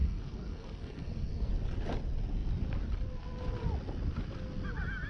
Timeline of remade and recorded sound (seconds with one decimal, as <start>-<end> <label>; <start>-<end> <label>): 0.0-1.5 remade; 1.5-5.1 recorded